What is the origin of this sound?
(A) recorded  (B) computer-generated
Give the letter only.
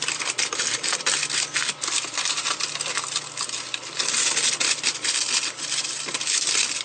A